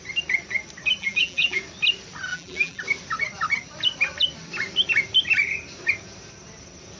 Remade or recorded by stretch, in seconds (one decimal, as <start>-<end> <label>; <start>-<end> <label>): 0.0-1.0 recorded; 1.0-1.6 remade; 1.6-2.3 recorded; 2.3-2.8 remade; 2.8-7.0 recorded